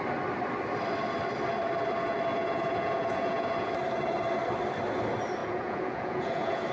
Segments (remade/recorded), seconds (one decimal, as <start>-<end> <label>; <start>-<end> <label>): 0.0-2.3 recorded; 2.3-3.7 remade; 3.7-5.4 recorded; 5.4-6.7 remade